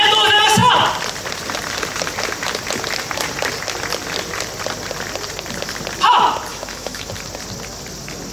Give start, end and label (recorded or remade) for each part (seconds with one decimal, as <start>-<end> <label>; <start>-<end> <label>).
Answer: 0.0-6.5 recorded; 6.5-7.1 remade; 7.1-8.3 recorded